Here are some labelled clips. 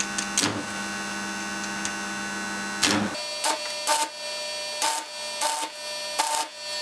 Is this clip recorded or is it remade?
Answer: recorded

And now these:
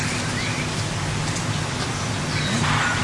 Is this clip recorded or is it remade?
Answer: recorded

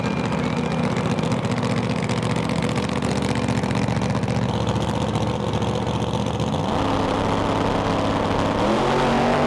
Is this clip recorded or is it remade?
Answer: recorded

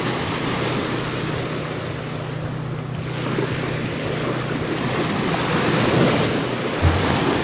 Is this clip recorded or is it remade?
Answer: recorded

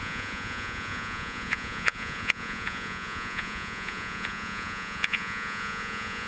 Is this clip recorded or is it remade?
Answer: remade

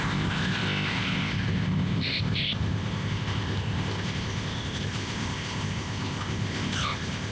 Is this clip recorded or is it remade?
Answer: remade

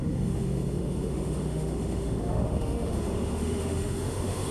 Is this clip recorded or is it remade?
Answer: remade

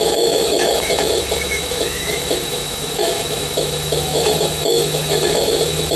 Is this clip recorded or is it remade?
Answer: remade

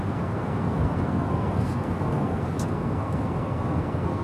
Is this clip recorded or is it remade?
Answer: remade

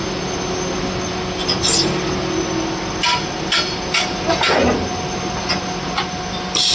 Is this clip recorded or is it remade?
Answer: recorded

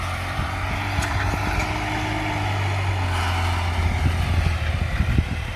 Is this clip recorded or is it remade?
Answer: recorded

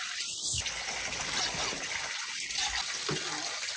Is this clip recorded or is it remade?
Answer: recorded